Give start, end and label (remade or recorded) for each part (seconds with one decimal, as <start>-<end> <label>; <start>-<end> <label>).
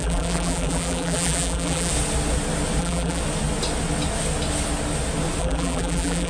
0.0-1.9 remade; 1.9-2.8 recorded; 2.8-3.2 remade; 3.2-5.4 recorded; 5.4-6.3 remade